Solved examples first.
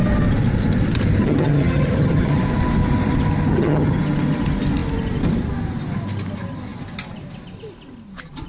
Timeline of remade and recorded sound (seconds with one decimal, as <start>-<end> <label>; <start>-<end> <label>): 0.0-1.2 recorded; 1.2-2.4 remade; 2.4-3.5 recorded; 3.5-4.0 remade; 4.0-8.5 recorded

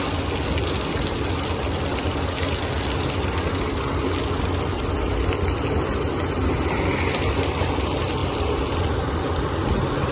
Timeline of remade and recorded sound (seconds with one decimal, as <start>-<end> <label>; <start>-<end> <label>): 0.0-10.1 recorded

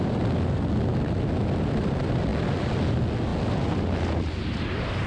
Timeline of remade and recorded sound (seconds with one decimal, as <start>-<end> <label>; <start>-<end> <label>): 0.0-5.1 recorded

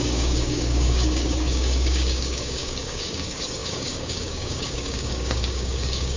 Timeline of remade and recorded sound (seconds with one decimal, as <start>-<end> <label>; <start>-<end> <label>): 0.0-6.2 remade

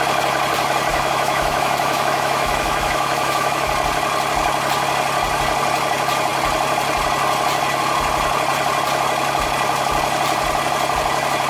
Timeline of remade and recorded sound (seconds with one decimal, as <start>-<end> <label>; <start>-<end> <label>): 0.0-0.9 recorded; 0.9-3.7 remade; 3.7-11.5 recorded

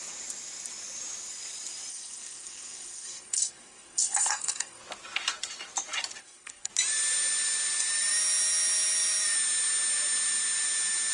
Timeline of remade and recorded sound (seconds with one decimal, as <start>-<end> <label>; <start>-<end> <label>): 0.0-1.9 recorded; 1.9-4.8 remade; 4.8-6.2 recorded; 6.2-6.7 remade; 6.7-11.1 recorded

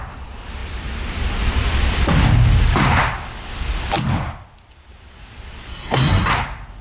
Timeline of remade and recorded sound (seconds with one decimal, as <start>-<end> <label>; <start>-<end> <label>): 0.0-5.7 recorded; 5.7-6.3 remade; 6.3-6.8 recorded

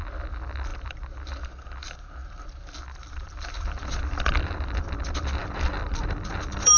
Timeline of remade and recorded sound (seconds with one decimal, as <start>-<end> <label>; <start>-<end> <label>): 0.0-2.2 remade; 2.2-3.9 recorded; 3.9-6.8 remade